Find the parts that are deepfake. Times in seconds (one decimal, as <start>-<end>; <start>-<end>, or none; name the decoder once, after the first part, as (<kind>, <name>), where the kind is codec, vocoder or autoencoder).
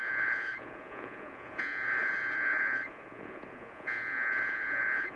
0.0-5.2 (vocoder, Vocos)